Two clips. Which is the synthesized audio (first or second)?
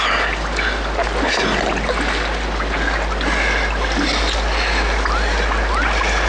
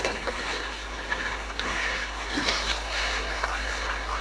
second